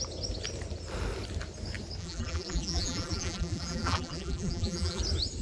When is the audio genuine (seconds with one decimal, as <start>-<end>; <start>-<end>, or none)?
0.0-2.0; 5.0-5.4